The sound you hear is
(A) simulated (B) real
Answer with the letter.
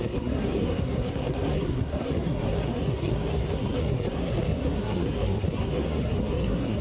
A